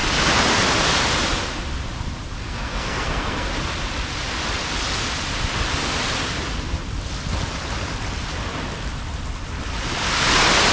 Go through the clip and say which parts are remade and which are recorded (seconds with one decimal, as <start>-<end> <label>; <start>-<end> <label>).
0.0-2.4 recorded; 2.4-3.5 remade; 3.5-10.7 recorded